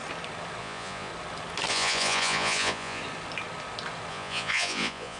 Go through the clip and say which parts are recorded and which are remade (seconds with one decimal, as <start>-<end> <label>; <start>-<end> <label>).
0.0-0.6 recorded; 0.6-1.1 remade; 1.1-1.7 recorded; 1.7-3.0 remade; 3.0-4.1 recorded; 4.1-5.2 remade